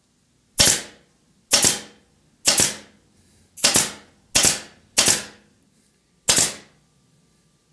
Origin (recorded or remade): recorded